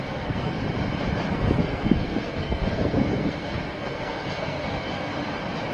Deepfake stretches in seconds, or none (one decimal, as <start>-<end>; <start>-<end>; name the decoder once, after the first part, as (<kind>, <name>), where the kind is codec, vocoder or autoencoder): 0.0-0.6 (codec, SNAC); 1.3-5.1